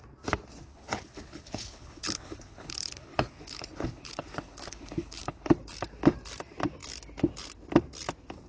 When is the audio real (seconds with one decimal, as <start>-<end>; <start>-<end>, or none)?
0.0-0.6; 5.6-8.5